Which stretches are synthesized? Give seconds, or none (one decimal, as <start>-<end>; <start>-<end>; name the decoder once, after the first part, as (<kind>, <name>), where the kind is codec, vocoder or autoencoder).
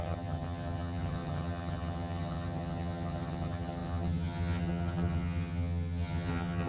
0.0-6.7 (vocoder, HiFi-GAN)